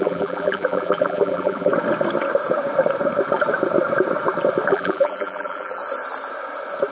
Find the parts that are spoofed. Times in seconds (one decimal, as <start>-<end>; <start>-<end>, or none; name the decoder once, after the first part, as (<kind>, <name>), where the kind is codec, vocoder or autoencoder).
0.0-1.7 (vocoder, BigVGAN v2); 4.7-5.8